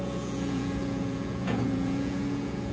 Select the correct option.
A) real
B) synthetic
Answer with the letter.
B